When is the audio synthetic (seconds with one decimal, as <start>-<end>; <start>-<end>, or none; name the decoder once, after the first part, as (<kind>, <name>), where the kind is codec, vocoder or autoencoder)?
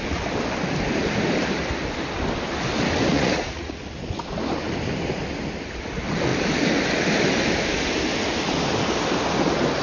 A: 3.1-3.8 (vocoder, Vocos)